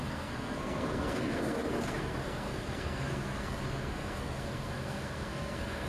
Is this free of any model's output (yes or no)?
no